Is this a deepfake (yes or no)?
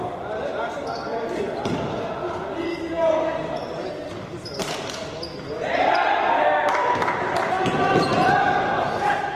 no